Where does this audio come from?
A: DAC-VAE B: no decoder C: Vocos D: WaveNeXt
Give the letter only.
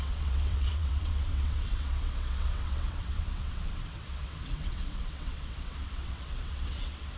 D